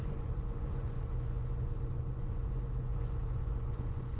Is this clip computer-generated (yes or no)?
yes